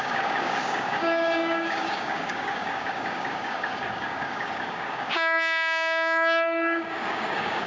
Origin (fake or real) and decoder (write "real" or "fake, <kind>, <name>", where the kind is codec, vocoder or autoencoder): fake, codec, DAC